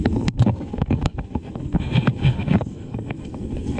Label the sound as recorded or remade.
remade